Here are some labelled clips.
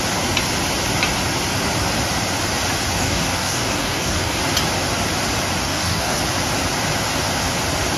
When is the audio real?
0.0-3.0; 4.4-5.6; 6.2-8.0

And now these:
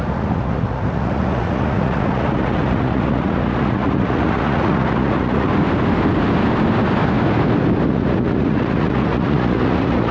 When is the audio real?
5.5-7.9